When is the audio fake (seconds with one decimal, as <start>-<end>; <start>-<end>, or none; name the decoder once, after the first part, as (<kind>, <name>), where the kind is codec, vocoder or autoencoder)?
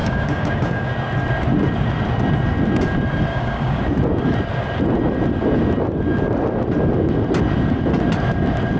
0.0-0.9 (codec, DAC); 3.3-3.8